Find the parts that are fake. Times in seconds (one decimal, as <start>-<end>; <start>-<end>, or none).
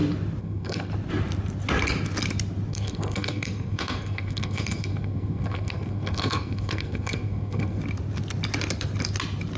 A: 0.4-0.9; 2.7-7.8